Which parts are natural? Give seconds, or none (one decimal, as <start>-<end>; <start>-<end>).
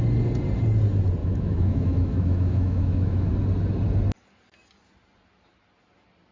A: 0.0-1.2; 3.3-6.3